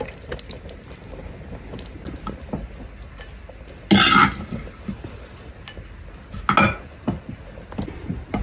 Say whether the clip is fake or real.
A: real